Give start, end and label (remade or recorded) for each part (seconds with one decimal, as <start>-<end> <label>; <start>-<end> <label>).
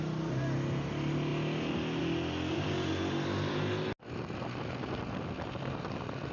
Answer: 0.0-6.3 recorded